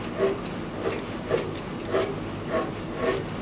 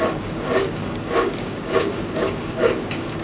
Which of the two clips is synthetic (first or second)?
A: second